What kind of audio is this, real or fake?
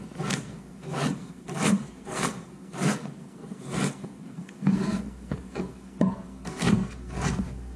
fake